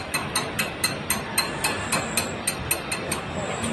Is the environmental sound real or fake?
real